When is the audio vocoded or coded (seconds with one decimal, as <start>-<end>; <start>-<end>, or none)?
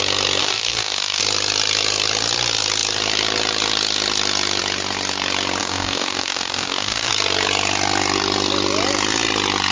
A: 0.4-1.2; 5.6-7.1